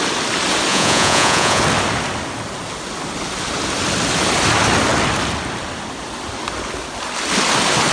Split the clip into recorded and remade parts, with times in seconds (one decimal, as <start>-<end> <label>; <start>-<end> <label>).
0.0-0.7 recorded; 0.7-1.6 remade; 1.6-7.9 recorded